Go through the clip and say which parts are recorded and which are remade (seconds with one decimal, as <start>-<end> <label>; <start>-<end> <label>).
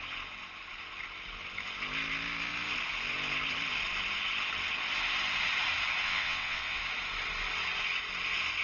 0.0-6.0 recorded; 6.0-6.8 remade; 6.8-8.6 recorded